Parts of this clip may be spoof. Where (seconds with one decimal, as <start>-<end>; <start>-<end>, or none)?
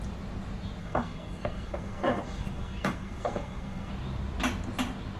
0.8-3.9